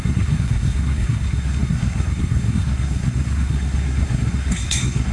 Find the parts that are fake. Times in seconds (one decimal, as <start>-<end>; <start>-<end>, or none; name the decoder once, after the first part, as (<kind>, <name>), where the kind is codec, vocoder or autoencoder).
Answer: 0.0-5.1 (codec, SNAC)